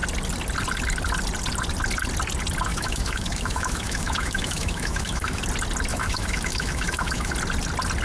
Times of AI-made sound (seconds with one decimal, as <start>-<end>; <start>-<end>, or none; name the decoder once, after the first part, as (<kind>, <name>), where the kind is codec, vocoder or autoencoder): 2.7-5.4 (autoencoder, DAC-VAE); 5.9-7.3